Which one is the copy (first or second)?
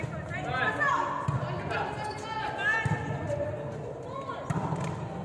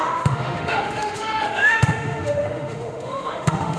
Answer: second